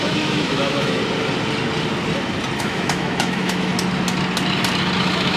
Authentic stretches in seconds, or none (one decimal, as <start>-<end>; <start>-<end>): 1.0-2.6; 3.7-5.0

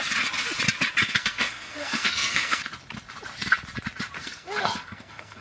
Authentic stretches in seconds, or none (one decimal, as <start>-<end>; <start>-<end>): 0.0-1.0; 2.7-4.2

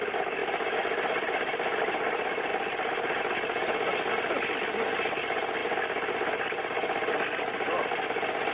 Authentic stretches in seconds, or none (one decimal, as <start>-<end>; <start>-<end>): 0.0-0.4; 1.8-2.5; 3.2-8.5

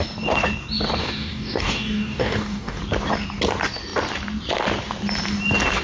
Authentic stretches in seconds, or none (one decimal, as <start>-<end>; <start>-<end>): 0.0-1.0; 2.8-5.8

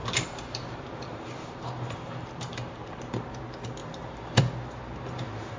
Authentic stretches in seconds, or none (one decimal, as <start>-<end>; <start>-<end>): 3.4-3.8; 4.4-5.6